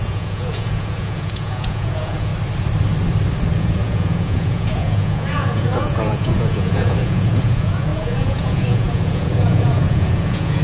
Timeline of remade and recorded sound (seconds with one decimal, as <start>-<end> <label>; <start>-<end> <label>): 0.0-2.3 remade; 2.3-3.6 recorded; 3.6-10.6 remade